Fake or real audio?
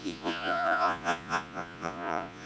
fake